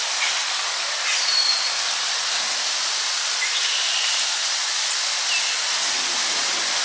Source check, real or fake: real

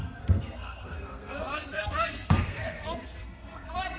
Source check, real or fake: fake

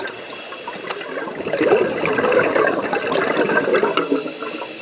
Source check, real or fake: real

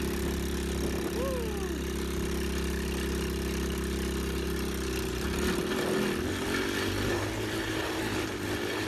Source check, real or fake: real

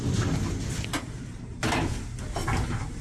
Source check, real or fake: real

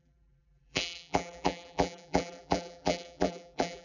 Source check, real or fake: fake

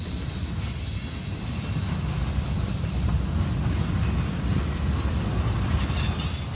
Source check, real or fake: real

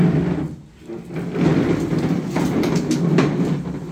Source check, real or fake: real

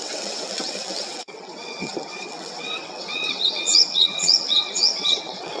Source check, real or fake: fake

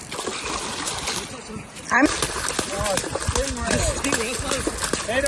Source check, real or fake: real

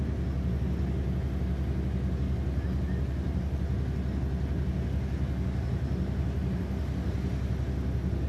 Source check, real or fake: real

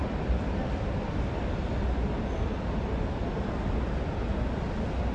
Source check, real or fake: real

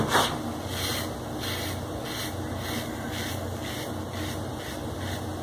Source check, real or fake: real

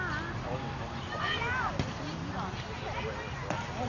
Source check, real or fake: real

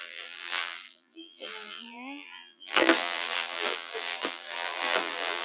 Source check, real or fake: fake